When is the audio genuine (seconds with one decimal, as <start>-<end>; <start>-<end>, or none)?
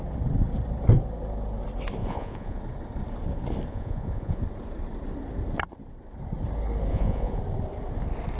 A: 0.0-2.0; 2.6-3.7; 4.4-6.9; 7.4-8.4